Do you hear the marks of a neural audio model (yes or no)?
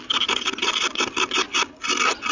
no